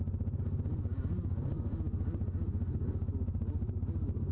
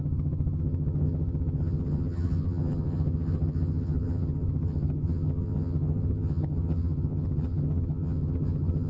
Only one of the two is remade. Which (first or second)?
second